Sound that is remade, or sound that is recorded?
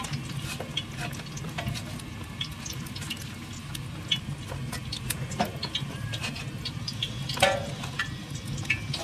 recorded